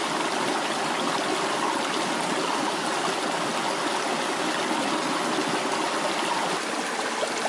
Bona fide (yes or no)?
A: yes